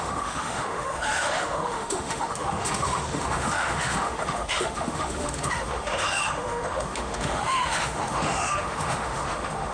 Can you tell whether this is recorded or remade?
remade